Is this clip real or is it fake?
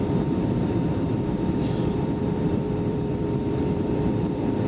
fake